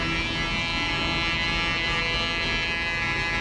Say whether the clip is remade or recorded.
recorded